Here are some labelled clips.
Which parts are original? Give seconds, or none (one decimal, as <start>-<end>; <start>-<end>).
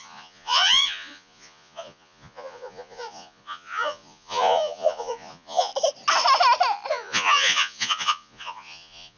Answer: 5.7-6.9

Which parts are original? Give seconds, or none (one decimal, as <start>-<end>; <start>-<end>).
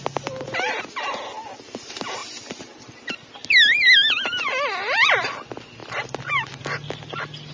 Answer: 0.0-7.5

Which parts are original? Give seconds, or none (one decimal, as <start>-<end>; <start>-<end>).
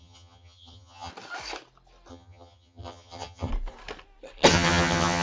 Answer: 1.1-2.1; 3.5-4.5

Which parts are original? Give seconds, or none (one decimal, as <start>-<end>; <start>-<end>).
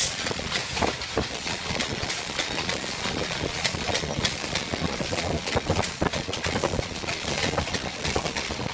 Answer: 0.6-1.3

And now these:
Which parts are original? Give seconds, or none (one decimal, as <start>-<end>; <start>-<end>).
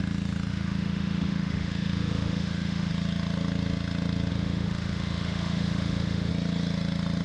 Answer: 0.0-0.5; 2.9-4.3; 6.3-7.2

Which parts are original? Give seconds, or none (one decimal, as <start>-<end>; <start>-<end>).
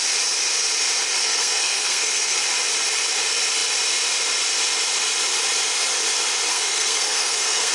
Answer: 0.0-1.2; 2.4-6.5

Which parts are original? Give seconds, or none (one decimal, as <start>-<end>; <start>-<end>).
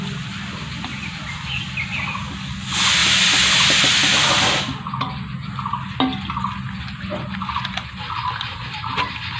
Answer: 0.0-9.4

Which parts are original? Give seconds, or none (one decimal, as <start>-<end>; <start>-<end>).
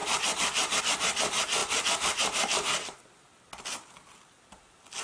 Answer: 0.8-1.6; 3.0-5.0